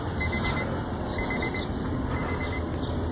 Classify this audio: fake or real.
real